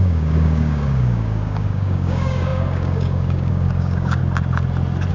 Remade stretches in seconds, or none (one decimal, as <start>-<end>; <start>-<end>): 0.0-4.2

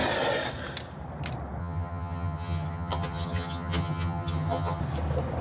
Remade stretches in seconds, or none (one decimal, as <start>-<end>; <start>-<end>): 1.6-4.8